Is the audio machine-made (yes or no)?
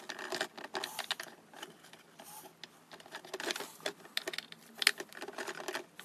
no